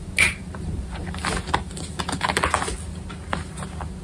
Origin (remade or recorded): recorded